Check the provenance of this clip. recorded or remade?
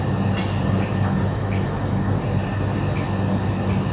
recorded